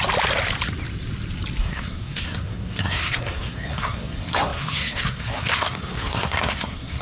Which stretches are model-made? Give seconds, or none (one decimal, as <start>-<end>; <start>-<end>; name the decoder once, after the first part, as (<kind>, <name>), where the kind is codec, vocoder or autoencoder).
1.6-7.0 (codec, SNAC)